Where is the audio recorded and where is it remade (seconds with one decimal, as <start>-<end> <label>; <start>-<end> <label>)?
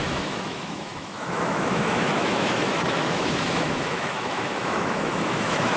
0.0-5.8 remade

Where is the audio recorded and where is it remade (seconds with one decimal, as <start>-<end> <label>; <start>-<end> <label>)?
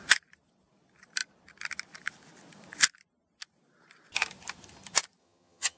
0.0-5.2 recorded; 5.2-5.8 remade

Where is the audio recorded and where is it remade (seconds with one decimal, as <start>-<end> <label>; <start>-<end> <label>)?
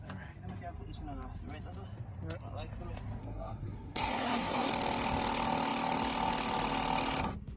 0.0-3.2 recorded; 3.2-4.7 remade; 4.7-7.6 recorded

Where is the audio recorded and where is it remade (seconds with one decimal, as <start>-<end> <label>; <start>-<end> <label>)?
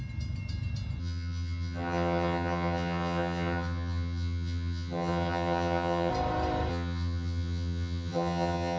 0.0-1.0 recorded; 1.0-6.1 remade; 6.1-6.7 recorded; 6.7-8.8 remade